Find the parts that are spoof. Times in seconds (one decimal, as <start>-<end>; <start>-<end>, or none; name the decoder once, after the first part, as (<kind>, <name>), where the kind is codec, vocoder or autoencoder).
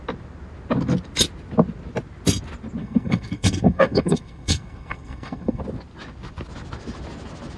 2.8-5.6 (codec, SNAC)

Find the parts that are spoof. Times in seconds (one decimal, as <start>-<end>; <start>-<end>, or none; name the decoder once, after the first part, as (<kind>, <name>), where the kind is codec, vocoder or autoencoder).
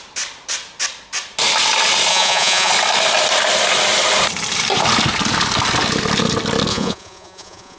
2.1-2.7 (vocoder, Vocos); 6.7-7.8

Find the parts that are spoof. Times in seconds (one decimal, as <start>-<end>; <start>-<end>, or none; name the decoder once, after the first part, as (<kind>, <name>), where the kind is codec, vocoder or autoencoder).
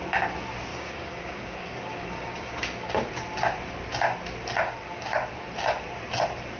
0.7-3.1 (codec, DAC); 4.6-5.2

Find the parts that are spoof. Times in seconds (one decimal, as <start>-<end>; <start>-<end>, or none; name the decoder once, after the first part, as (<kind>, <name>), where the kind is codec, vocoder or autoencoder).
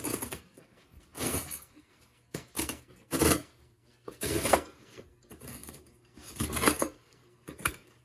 0.0-8.0 (codec, SNAC)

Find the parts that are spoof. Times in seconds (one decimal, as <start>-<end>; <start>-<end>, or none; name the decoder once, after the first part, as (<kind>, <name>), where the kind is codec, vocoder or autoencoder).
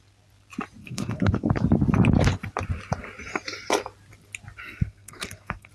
0.8-1.5 (codec, SNAC); 4.6-5.7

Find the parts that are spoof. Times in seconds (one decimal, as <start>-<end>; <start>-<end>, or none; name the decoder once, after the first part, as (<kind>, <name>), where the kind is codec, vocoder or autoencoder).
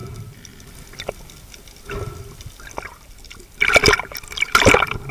none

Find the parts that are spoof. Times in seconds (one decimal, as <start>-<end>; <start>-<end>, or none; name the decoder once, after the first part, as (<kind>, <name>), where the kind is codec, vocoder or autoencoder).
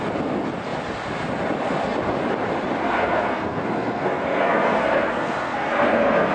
2.8-6.3 (codec, SNAC)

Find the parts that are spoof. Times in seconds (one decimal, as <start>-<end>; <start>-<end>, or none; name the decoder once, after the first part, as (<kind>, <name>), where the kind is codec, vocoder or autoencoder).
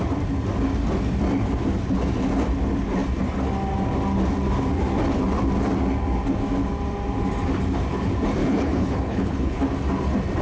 8.4-9.6 (codec, HILCodec)